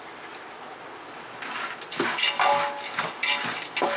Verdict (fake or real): real